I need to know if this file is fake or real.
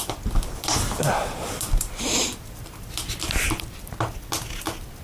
real